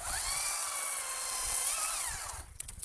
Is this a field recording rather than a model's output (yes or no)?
no